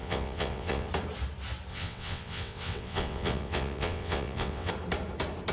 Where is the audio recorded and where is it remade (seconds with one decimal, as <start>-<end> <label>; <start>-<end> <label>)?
0.0-0.9 remade; 0.9-1.7 recorded; 1.7-4.7 remade; 4.7-5.5 recorded